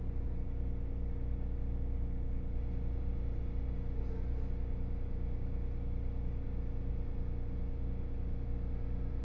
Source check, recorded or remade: recorded